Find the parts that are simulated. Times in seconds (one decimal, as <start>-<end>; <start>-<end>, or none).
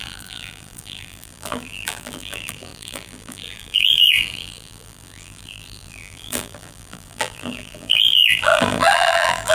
0.0-9.5